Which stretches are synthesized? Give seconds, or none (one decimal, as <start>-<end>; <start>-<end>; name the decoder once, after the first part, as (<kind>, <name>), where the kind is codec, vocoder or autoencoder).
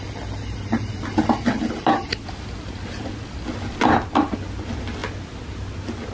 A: none